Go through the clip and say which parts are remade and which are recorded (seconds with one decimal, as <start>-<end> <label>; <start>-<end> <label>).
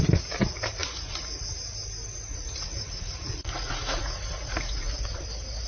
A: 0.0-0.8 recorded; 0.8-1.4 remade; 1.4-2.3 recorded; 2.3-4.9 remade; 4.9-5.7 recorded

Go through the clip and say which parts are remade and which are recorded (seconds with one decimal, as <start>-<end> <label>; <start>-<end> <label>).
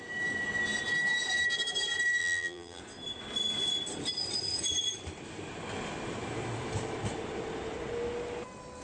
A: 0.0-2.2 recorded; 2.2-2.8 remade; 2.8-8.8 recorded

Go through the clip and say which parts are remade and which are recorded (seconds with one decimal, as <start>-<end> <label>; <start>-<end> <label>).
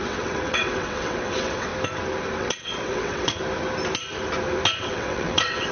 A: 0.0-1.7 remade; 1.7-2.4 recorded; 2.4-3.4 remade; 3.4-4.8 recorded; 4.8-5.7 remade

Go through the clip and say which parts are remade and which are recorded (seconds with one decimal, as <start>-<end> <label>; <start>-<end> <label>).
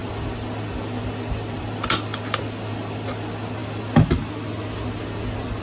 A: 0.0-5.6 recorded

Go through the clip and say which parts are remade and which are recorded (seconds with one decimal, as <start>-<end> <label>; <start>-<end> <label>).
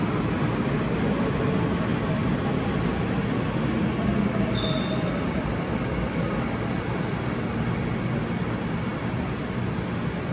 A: 0.0-10.3 recorded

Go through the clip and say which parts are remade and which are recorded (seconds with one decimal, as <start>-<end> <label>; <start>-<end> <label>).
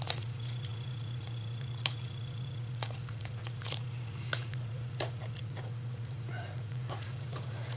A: 0.0-7.8 remade